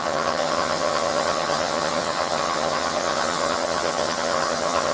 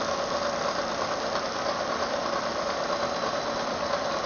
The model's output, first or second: first